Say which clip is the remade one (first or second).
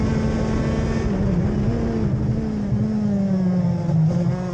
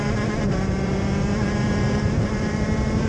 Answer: second